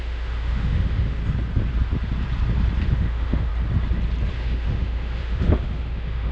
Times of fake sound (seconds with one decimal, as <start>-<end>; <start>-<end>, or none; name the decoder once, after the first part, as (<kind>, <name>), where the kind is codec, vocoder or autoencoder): 0.0-1.2 (autoencoder, DAC-VAE); 2.9-3.5; 4.3-6.3